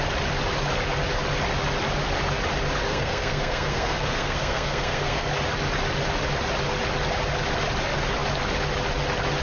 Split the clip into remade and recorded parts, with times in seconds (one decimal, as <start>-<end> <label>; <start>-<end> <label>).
0.0-2.9 recorded; 2.9-5.3 remade; 5.3-9.4 recorded